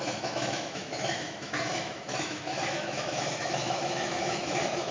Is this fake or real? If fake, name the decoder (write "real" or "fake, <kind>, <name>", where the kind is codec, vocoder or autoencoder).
fake, autoencoder, DAC-VAE